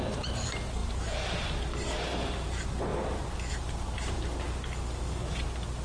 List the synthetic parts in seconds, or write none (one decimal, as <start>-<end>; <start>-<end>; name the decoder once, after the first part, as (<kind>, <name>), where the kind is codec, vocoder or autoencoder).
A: none